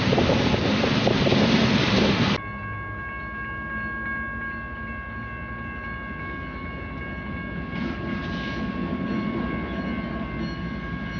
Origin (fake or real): real